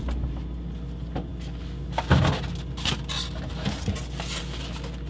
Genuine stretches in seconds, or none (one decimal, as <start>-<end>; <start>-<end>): 0.0-5.1